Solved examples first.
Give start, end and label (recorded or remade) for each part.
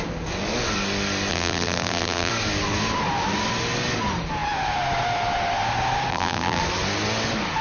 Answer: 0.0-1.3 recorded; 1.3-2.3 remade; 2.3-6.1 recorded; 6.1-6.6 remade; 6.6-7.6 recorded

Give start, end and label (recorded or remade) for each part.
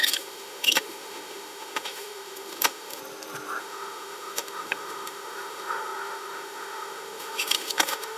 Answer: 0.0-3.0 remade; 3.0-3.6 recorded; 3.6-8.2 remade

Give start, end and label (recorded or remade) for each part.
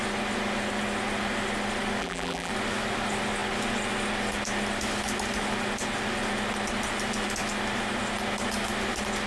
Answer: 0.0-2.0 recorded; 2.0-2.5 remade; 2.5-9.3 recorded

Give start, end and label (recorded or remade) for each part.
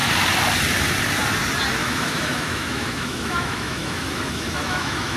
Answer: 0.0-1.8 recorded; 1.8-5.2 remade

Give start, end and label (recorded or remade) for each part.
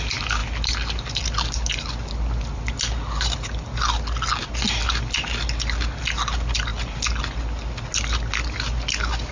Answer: 0.0-9.3 recorded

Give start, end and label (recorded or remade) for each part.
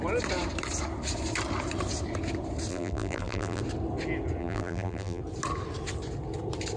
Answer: 0.0-2.7 recorded; 2.7-3.6 remade; 3.6-4.4 recorded; 4.4-5.2 remade; 5.2-6.8 recorded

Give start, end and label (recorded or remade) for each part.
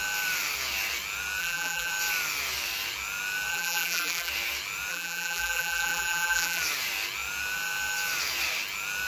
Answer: 0.0-1.4 recorded; 1.4-1.9 remade; 1.9-3.5 recorded; 3.5-4.3 remade; 4.3-4.9 recorded; 4.9-6.6 remade; 6.6-9.1 recorded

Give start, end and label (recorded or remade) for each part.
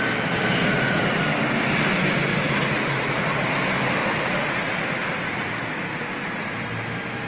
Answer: 0.0-0.6 recorded; 0.6-1.2 remade; 1.2-2.3 recorded; 2.3-3.5 remade; 3.5-4.0 recorded; 4.0-5.5 remade; 5.5-7.3 recorded